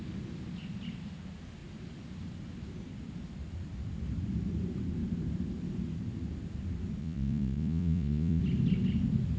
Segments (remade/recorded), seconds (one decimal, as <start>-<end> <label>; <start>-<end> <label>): 0.0-7.0 recorded; 7.0-8.4 remade; 8.4-9.4 recorded